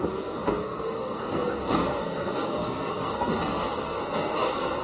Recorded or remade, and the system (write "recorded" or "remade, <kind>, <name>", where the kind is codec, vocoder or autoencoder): remade, codec, SNAC